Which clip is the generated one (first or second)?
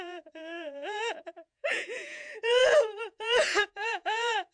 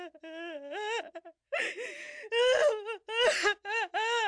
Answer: first